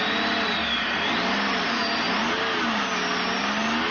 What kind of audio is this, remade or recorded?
recorded